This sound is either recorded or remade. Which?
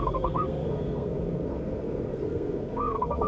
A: remade